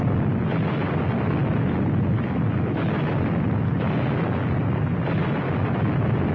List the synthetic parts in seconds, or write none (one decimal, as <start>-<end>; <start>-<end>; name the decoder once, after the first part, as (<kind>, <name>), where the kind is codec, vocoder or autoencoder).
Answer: none